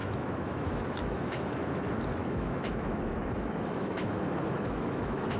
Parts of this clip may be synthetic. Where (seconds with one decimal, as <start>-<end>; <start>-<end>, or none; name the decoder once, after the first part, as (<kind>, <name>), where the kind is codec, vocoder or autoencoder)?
0.0-1.8 (autoencoder, DAC-VAE); 2.2-5.4